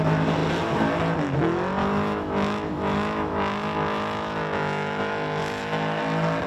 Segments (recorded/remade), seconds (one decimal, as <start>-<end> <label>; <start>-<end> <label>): 0.0-1.8 recorded; 1.8-5.0 remade; 5.0-5.4 recorded; 5.4-6.0 remade; 6.0-6.5 recorded